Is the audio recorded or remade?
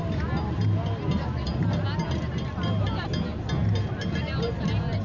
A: recorded